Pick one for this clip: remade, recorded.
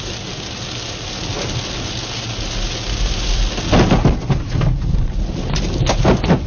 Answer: recorded